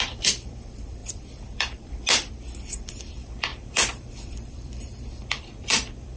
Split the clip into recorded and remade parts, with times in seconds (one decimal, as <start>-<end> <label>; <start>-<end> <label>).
0.0-6.2 remade